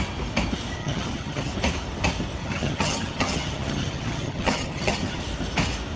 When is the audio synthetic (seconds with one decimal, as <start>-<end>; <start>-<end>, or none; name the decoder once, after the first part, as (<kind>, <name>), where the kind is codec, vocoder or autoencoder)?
0.8-1.5 (vocoder, HiFi-GAN); 2.4-5.2